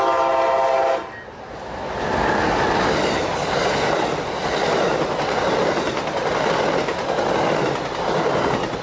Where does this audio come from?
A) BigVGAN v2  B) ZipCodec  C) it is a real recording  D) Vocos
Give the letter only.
C